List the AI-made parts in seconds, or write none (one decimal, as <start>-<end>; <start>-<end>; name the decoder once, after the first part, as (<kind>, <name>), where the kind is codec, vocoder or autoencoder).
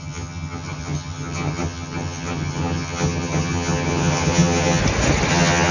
0.0-4.8 (vocoder, HiFi-GAN); 5.3-5.7